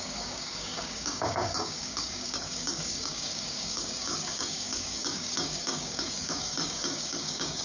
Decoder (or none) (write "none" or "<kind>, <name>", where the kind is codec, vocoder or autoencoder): codec, DAC